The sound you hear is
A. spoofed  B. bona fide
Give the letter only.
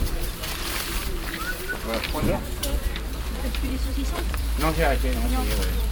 A